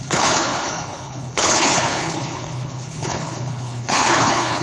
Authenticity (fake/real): fake